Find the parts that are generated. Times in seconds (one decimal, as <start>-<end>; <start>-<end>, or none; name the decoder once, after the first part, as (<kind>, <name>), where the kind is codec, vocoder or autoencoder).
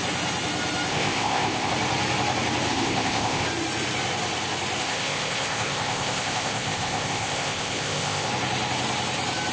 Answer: 0.9-1.7 (codec, ZipCodec); 2.7-3.4; 4.8-8.3